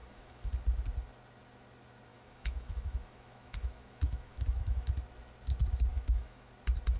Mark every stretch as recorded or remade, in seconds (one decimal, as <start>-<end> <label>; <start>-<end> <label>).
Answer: 0.0-0.5 remade; 0.5-2.1 recorded; 2.1-4.9 remade; 4.9-5.9 recorded; 5.9-6.5 remade; 6.5-7.0 recorded